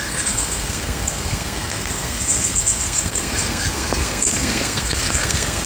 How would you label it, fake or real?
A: fake